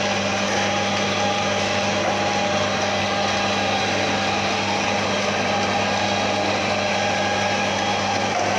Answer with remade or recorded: recorded